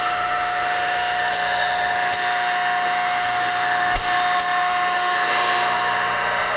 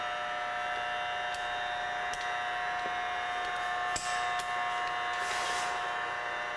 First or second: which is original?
second